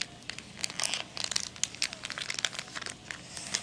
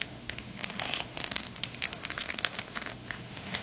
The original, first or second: first